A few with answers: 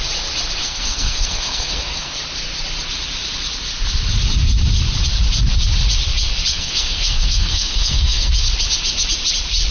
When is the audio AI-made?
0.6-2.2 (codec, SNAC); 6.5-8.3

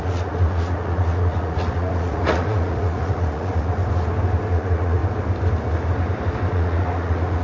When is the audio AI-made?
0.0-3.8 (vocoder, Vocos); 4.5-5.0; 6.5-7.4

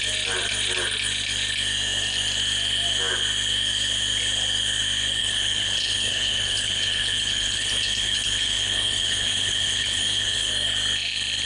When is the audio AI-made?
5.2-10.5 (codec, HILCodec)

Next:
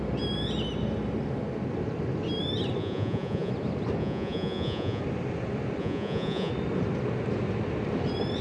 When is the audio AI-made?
2.8-3.5 (vocoder, Vocos); 4.0-5.0; 5.8-6.5

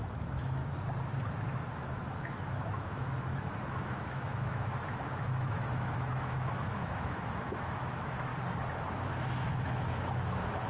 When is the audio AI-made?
0.0-0.6 (autoencoder, DAC-VAE); 1.7-8.3; 8.9-10.7

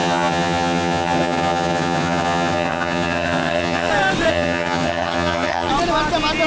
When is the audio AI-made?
0.0-3.9 (vocoder, HiFi-GAN); 4.3-5.7